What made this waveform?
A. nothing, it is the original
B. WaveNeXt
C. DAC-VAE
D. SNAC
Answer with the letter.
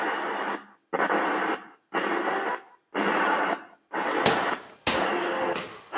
A